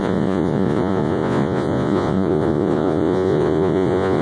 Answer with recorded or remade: remade